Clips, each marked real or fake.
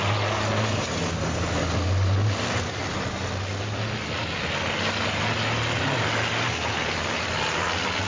real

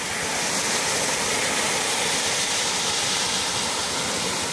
real